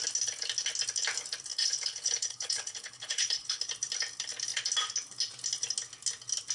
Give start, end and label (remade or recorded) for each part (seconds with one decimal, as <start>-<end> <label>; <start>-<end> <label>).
0.0-1.5 recorded; 1.5-3.6 remade; 3.6-6.5 recorded